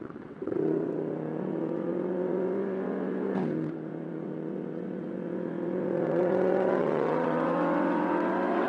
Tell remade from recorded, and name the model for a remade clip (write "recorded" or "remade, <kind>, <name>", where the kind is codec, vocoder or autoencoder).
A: remade, vocoder, WaveNeXt